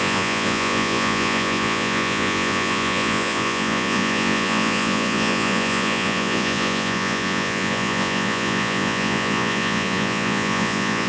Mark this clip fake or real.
fake